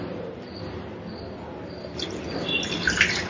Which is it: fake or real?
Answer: real